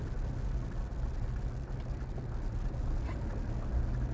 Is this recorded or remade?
recorded